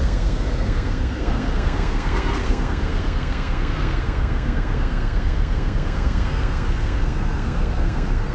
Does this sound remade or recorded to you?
remade